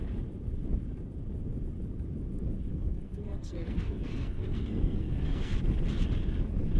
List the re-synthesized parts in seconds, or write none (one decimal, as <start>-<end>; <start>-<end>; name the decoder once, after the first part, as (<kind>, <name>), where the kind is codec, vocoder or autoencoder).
2.7-5.5 (codec, SNAC)